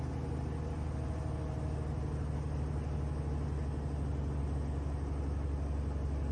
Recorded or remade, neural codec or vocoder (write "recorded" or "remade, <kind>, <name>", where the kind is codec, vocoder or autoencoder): recorded